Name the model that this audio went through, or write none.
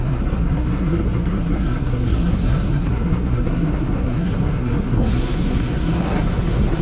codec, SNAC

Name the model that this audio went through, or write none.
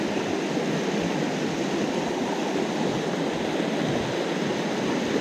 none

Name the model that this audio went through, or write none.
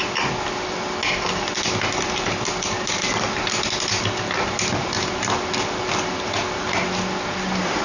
none